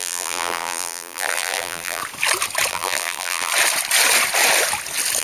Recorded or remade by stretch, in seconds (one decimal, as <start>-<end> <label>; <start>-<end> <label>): 0.0-2.0 remade; 2.0-2.7 recorded; 2.7-3.5 remade; 3.5-5.2 recorded